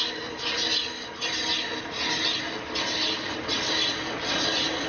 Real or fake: real